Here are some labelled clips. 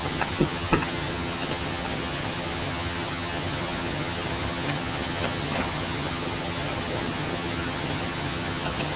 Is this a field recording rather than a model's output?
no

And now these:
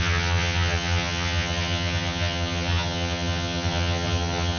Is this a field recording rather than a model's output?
no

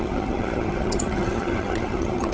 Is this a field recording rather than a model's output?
no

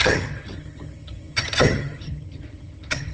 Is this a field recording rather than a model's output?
no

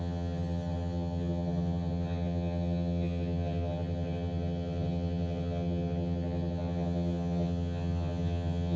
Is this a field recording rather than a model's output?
no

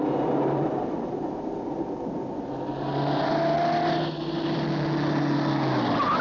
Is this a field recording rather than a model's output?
yes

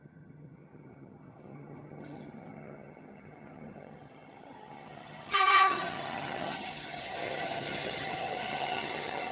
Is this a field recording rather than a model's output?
no